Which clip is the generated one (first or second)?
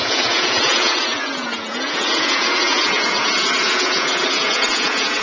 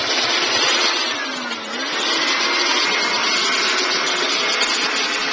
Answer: first